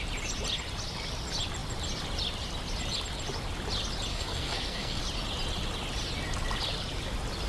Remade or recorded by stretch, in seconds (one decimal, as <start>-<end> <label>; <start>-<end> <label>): 0.0-4.1 recorded; 4.1-5.0 remade; 5.0-7.5 recorded